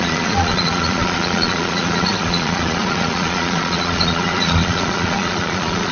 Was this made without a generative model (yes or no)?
no